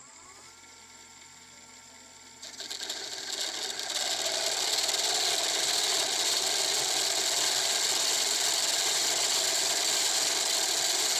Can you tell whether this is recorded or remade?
recorded